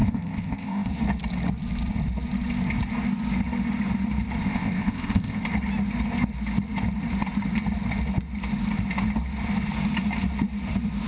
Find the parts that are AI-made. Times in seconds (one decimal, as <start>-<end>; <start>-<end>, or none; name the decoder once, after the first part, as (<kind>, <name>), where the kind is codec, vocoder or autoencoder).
0.0-0.9 (codec, ZipCodec); 4.4-5.4